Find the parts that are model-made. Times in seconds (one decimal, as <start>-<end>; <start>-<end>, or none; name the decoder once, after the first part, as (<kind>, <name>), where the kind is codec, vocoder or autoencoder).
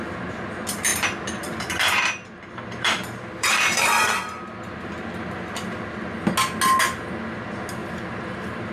0.9-5.8 (vocoder, BigVGAN v2); 7.8-8.7